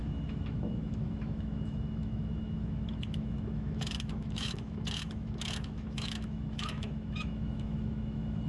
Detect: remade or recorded remade